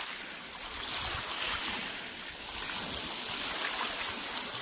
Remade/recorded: recorded